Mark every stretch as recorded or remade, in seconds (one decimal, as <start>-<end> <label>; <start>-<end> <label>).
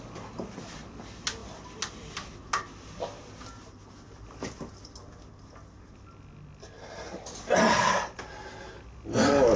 0.0-9.6 recorded